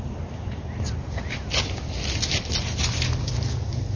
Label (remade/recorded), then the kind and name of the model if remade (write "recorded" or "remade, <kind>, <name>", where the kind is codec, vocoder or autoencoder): recorded